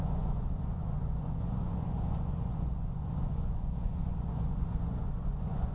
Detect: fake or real fake